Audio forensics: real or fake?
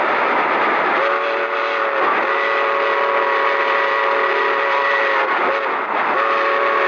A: real